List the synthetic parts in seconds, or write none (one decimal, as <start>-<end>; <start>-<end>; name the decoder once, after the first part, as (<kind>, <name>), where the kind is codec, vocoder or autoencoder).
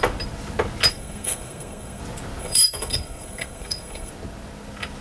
0.9-2.0 (codec, SNAC); 2.4-4.1